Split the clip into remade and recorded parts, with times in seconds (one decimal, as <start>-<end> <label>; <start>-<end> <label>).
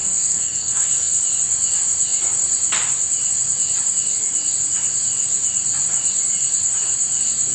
0.0-1.2 remade; 1.2-7.5 recorded